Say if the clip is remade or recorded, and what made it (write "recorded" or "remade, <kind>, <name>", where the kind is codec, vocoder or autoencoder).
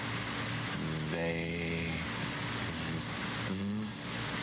recorded